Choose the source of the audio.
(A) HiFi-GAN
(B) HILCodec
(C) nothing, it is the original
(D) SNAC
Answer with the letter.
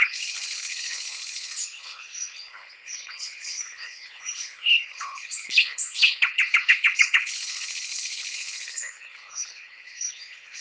B